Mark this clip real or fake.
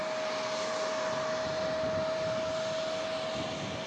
real